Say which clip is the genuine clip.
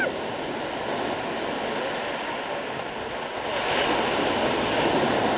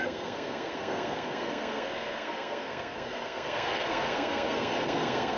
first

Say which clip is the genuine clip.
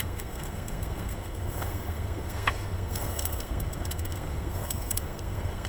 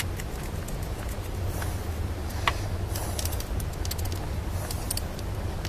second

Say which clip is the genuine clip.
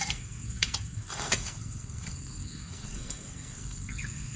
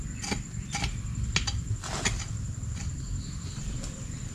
second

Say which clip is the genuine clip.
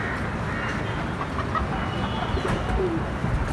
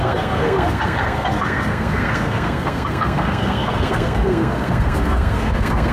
first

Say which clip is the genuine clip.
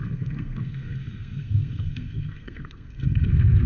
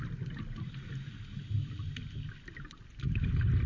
second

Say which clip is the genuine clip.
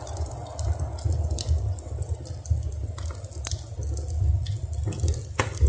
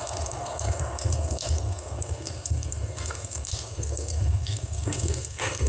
first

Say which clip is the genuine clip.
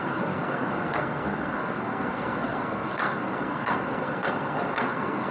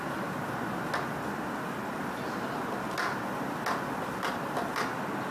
second